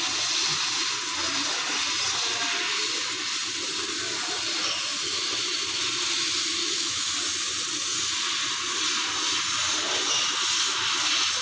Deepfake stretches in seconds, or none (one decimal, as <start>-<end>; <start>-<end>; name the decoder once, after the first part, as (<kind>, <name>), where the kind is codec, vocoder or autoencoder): 6.6-7.1 (autoencoder, DAC-VAE)